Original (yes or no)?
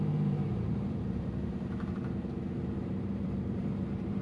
no